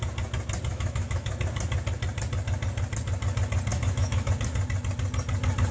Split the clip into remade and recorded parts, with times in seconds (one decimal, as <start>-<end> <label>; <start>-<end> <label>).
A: 0.0-0.7 recorded; 0.7-1.3 remade; 1.3-3.7 recorded; 3.7-4.3 remade; 4.3-5.7 recorded

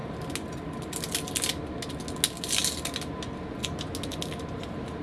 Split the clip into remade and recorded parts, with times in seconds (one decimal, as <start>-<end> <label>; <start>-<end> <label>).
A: 0.0-5.0 recorded

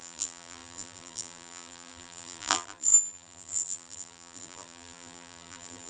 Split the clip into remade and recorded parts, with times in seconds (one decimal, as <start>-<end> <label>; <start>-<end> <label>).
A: 0.0-5.9 remade

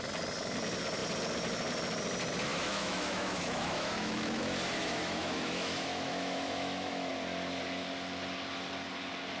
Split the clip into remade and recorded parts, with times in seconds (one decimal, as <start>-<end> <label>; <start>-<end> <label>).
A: 0.0-2.5 recorded; 2.5-7.1 remade; 7.1-9.4 recorded

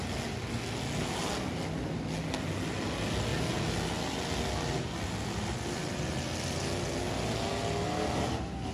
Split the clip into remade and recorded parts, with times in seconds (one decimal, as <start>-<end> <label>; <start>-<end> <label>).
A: 0.0-8.7 recorded